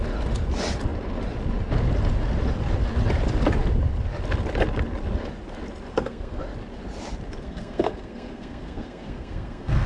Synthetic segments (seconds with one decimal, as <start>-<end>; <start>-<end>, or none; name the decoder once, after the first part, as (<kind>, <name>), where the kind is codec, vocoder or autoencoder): 5.9-6.4 (codec, SNAC); 7.4-9.9